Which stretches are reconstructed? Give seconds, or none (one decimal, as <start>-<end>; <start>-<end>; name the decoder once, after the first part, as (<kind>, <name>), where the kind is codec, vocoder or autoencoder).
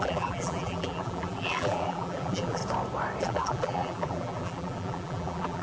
0.0-2.6 (vocoder, BigVGAN v2); 3.2-5.6